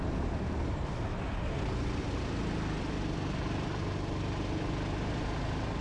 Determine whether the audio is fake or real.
real